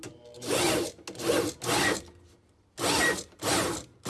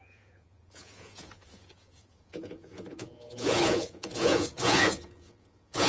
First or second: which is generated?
second